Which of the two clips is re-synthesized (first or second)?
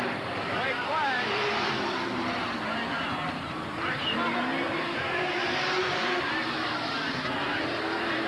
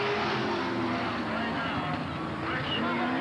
first